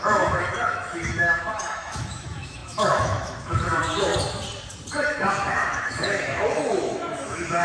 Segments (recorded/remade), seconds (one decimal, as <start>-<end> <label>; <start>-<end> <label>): 0.0-4.1 remade; 4.1-5.3 recorded; 5.3-7.6 remade